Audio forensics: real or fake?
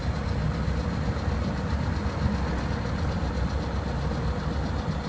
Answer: real